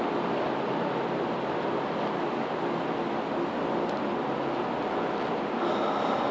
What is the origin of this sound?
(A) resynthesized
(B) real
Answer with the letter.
B